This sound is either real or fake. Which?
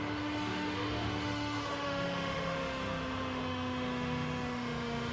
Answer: fake